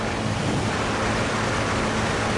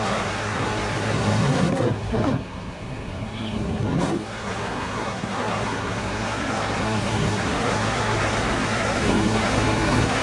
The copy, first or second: second